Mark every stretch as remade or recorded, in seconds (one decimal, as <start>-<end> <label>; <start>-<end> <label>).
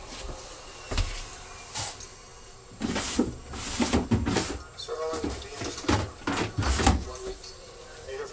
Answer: 0.0-8.3 recorded